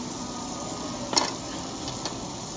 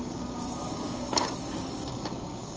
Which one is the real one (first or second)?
first